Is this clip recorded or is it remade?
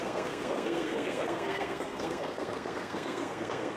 remade